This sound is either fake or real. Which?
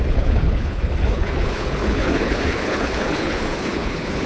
fake